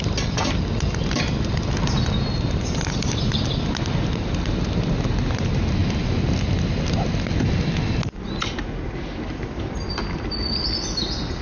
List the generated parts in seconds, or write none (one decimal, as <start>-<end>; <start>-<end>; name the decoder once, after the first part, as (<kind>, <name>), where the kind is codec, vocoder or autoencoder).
none